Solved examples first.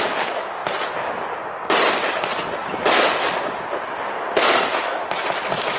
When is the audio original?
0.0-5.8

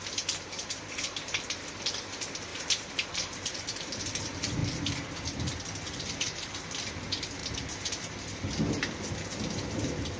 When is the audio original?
4.6-5.9

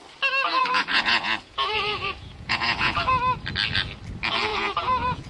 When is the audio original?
0.0-0.6; 3.1-4.5

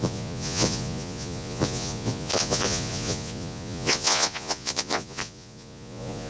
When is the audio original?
none

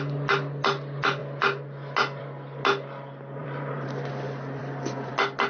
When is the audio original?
0.0-3.4; 4.1-4.6; 5.1-5.5

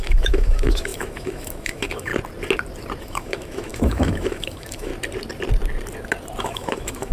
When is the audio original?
2.1-3.0; 4.9-6.4

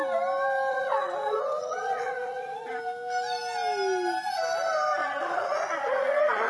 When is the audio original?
0.0-0.7; 2.7-5.0